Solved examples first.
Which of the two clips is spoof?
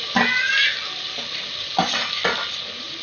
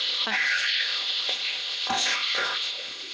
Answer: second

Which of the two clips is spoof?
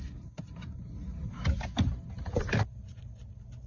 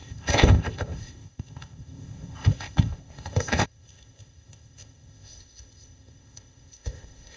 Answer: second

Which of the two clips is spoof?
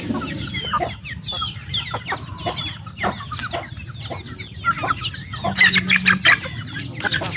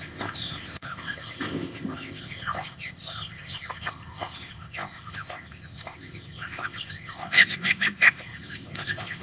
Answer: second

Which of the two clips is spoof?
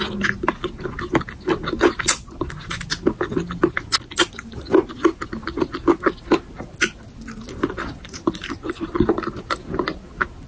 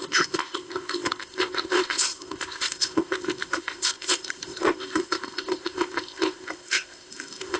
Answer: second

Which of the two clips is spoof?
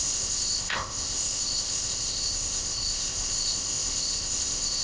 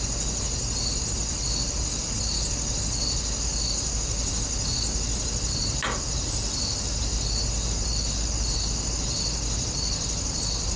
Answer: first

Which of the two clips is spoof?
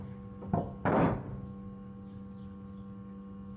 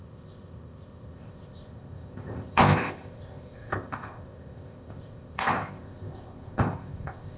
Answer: second